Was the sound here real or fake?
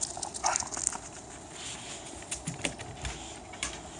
real